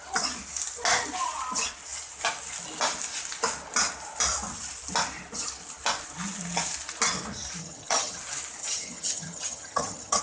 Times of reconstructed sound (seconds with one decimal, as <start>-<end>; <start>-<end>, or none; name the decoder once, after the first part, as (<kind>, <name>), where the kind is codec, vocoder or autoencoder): 7.6-8.2 (vocoder, HiFi-GAN); 8.6-10.2